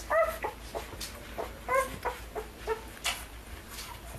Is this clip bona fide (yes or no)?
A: yes